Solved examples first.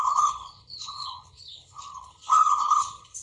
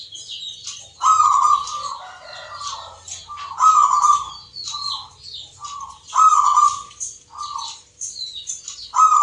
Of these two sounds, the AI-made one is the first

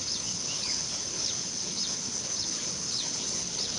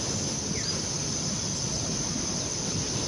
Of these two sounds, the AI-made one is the first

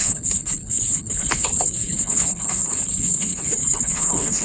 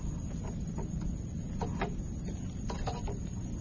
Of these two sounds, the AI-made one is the first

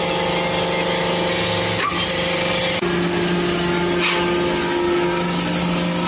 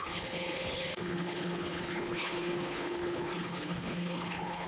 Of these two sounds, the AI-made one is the second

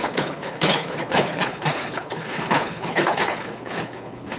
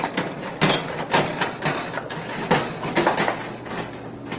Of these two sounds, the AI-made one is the first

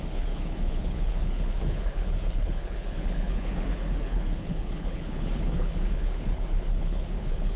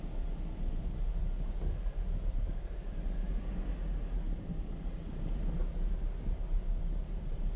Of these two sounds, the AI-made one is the first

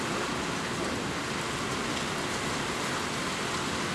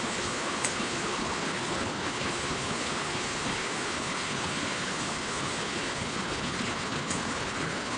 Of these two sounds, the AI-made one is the second